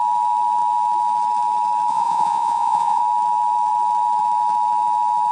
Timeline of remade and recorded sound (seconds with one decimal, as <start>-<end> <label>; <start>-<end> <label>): 0.0-1.9 recorded; 1.9-3.0 remade; 3.0-5.3 recorded